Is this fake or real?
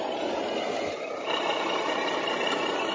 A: real